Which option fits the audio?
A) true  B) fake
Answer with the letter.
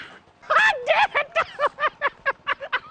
A